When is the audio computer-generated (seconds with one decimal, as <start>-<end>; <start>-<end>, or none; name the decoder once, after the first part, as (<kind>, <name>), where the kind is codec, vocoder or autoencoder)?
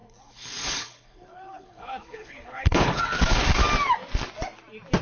0.0-3.0 (codec, HILCodec)